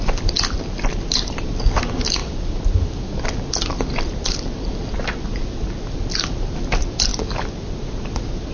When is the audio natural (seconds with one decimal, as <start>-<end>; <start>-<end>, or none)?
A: 0.0-8.5